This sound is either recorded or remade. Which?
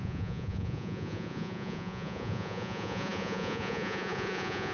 remade